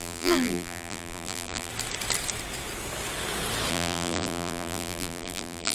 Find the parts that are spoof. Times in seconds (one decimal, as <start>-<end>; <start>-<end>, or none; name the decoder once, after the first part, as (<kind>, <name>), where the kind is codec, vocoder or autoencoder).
0.0-1.7 (vocoder, BigVGAN v2); 3.7-5.7